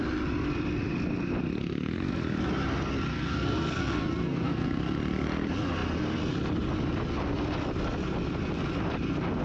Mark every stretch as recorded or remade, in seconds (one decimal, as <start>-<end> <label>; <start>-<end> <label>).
0.0-1.6 recorded; 1.6-2.1 remade; 2.1-3.1 recorded; 3.1-4.8 remade; 4.8-9.4 recorded